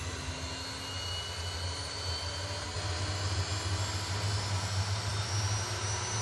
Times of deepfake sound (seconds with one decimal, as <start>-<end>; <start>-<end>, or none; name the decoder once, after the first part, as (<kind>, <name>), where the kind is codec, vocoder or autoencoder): none